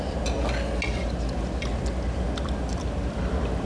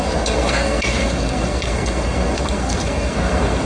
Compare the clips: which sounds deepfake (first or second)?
second